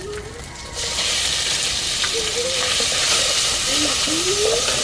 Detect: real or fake fake